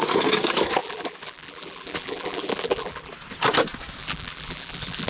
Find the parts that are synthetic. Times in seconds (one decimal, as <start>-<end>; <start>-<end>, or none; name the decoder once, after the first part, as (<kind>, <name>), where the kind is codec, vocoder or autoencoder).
0.8-3.1 (vocoder, BigVGAN v2); 4.0-5.1